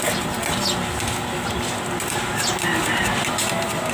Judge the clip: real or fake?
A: real